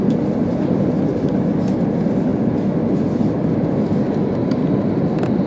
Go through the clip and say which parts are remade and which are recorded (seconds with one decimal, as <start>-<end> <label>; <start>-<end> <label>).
0.0-5.5 remade